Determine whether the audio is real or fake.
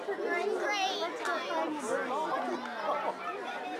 real